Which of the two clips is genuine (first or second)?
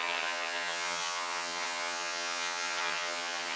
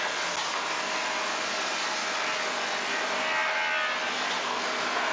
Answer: second